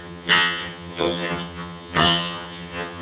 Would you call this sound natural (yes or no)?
no